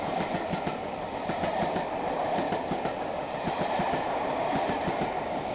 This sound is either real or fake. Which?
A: real